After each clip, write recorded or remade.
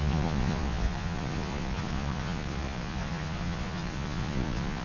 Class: remade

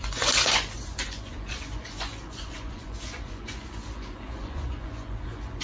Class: remade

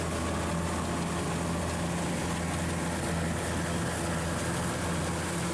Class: recorded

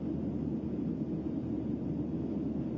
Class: recorded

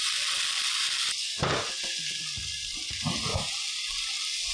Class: recorded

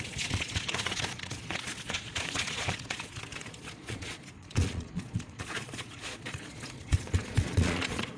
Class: remade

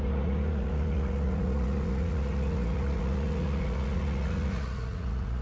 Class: remade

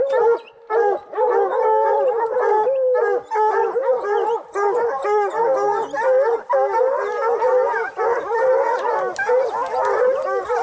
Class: recorded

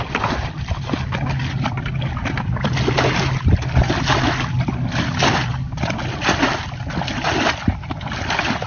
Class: recorded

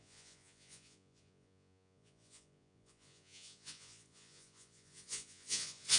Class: remade